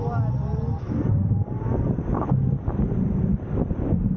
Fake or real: real